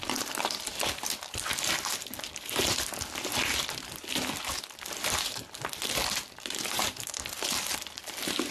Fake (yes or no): no